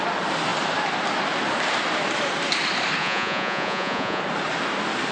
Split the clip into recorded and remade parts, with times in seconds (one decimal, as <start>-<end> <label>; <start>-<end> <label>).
0.0-3.0 recorded; 3.0-4.2 remade; 4.2-5.1 recorded